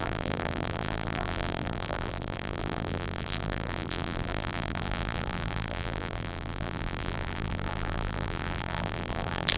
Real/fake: fake